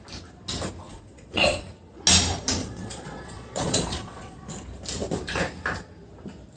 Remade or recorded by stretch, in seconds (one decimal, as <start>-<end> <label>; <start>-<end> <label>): 0.0-0.9 recorded; 0.9-1.6 remade; 1.6-2.6 recorded; 2.6-4.5 remade; 4.5-6.6 recorded